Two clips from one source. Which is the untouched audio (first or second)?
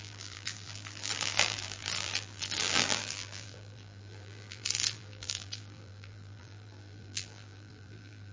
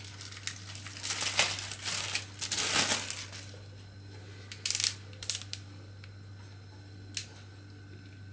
second